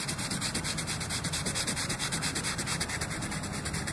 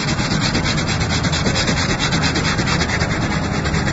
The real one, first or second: second